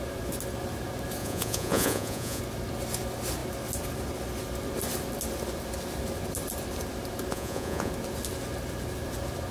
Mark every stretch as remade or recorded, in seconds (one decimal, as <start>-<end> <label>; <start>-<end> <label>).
0.0-1.2 recorded; 1.2-2.4 remade; 2.4-7.3 recorded; 7.3-7.9 remade; 7.9-9.5 recorded